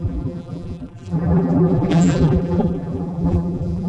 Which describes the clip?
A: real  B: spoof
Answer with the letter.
B